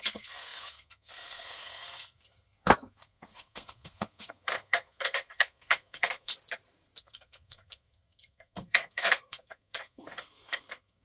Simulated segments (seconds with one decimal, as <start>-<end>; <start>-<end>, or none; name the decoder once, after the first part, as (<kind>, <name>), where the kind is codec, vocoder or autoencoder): 0.0-6.3 (codec, SNAC); 7.0-11.0